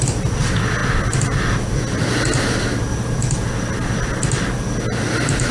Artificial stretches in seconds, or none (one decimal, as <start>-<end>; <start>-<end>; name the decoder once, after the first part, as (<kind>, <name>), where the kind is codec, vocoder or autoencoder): none